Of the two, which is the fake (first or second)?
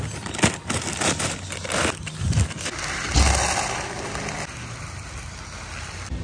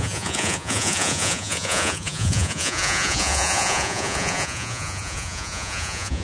second